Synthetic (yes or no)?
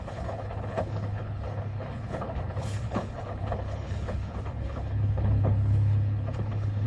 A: yes